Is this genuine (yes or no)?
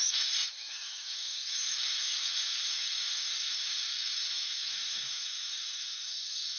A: no